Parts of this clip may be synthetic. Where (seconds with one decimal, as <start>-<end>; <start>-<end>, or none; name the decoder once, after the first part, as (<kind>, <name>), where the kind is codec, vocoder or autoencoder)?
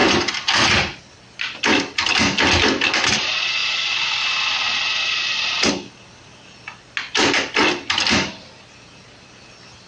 none